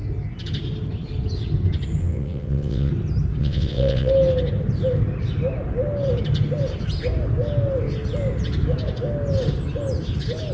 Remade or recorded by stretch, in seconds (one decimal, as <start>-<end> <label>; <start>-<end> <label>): 0.0-2.0 recorded; 2.0-2.9 remade; 2.9-3.4 recorded; 3.4-4.1 remade; 4.1-10.5 recorded